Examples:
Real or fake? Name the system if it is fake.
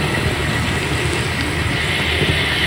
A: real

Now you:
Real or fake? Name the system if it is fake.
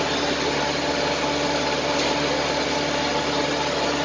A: real